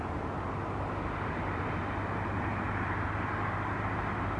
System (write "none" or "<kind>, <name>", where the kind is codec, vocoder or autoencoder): none